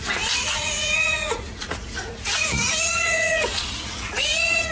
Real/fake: fake